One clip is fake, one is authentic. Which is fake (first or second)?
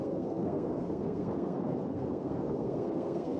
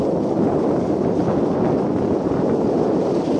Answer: first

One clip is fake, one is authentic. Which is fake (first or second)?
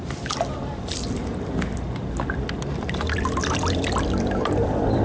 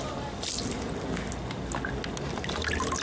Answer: first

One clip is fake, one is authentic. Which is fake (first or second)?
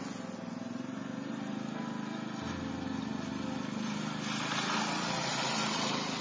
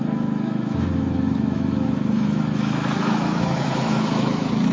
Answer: second